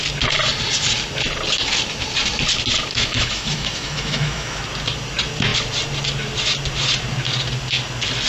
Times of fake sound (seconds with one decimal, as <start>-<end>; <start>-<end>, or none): 2.9-4.6